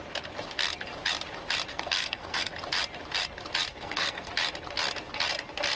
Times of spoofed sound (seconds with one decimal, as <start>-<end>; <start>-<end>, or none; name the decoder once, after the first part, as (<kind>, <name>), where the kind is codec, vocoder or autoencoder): 1.7-2.5 (codec, SNAC); 3.7-4.3